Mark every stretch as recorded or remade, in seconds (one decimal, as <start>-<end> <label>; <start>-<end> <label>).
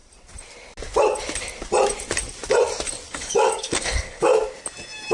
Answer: 0.0-3.1 recorded; 3.1-4.3 remade; 4.3-5.1 recorded